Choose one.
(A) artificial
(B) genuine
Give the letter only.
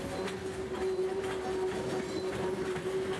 B